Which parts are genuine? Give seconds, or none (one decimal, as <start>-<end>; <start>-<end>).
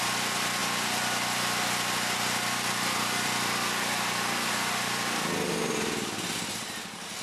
none